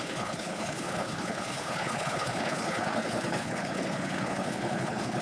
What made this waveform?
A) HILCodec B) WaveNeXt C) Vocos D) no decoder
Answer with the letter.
A